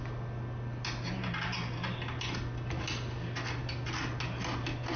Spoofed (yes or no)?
no